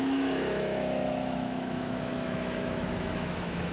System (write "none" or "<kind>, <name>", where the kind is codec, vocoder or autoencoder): autoencoder, DAC-VAE